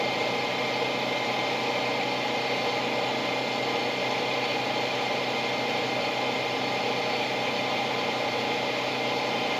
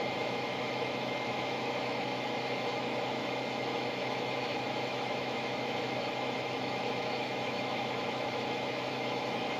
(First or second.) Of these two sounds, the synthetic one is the second